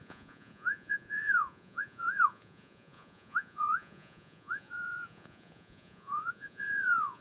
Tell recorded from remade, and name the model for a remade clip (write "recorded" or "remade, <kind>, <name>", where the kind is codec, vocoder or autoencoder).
remade, vocoder, Vocos